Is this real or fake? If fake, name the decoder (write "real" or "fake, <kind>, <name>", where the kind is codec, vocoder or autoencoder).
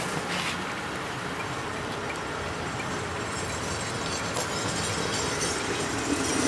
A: real